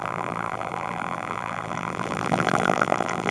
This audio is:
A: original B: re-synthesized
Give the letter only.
B